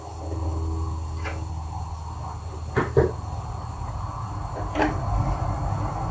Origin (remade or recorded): recorded